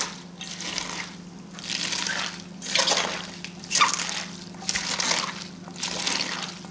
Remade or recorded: recorded